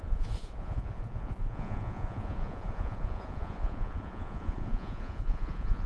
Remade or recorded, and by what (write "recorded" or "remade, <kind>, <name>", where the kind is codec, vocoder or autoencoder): remade, vocoder, Vocos